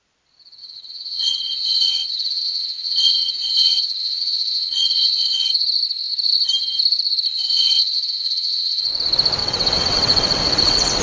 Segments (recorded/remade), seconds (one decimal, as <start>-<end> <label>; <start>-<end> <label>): 0.0-0.6 recorded; 0.6-5.5 remade; 5.5-7.5 recorded; 7.5-8.9 remade; 8.9-9.4 recorded; 9.4-11.0 remade